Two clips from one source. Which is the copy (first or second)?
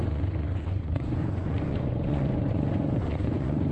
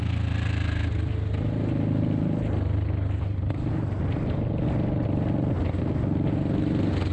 first